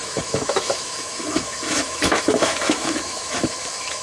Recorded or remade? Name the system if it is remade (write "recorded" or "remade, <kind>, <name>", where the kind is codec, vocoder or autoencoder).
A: remade, autoencoder, DAC-VAE